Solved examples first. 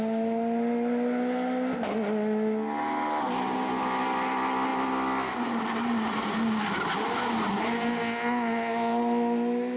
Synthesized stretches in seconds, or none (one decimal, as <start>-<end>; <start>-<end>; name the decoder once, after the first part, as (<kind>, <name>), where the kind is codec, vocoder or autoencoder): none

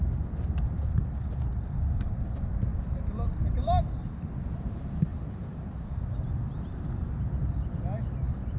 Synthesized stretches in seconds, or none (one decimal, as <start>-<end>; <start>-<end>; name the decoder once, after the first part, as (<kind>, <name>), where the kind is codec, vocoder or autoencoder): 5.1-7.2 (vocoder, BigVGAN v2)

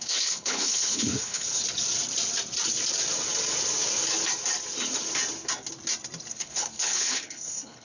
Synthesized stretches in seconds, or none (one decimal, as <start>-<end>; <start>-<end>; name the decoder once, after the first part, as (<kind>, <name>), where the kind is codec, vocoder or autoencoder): 0.0-1.6 (codec, HILCodec); 6.3-7.8